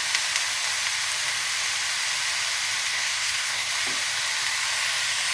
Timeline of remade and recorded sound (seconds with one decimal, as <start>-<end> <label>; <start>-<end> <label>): 0.0-2.9 recorded; 2.9-3.7 remade; 3.7-5.3 recorded